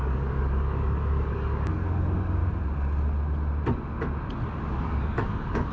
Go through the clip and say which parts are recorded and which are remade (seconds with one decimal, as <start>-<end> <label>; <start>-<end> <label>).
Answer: 0.0-2.4 remade; 2.4-4.8 recorded; 4.8-5.7 remade